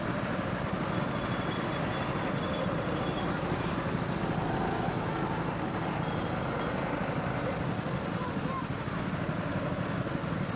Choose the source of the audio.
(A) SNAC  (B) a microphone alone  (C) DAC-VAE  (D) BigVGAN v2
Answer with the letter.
B